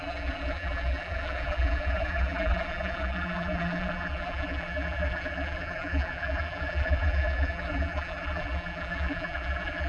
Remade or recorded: remade